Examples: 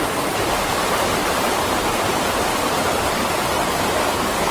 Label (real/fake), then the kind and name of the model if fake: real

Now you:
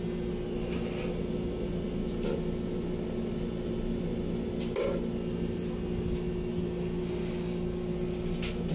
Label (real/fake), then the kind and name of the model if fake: real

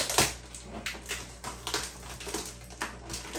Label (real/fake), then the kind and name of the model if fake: real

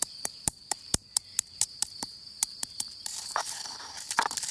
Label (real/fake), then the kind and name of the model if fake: fake, vocoder, BigVGAN v2